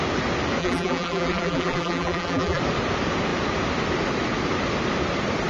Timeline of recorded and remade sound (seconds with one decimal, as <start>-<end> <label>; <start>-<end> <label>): 0.0-0.6 recorded; 0.6-2.6 remade; 2.6-5.5 recorded